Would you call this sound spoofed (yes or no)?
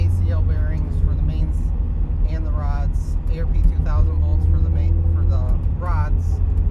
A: no